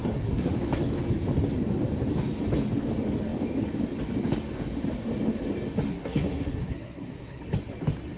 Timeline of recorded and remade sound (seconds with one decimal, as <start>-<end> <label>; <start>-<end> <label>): 0.0-0.5 remade; 0.5-5.9 recorded; 5.9-7.4 remade; 7.4-8.2 recorded